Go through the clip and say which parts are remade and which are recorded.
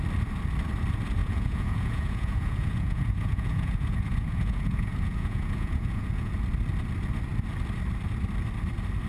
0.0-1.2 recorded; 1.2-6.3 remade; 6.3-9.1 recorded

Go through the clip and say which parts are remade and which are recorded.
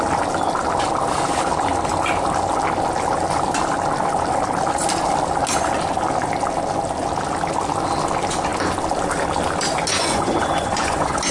0.0-9.9 recorded; 9.9-11.3 remade